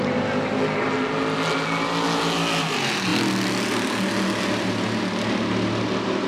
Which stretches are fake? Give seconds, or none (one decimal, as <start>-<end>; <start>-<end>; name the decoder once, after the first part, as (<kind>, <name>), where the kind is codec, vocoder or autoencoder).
none